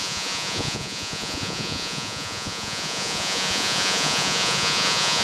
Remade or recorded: remade